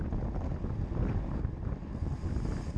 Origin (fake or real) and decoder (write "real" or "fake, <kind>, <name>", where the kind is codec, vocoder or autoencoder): real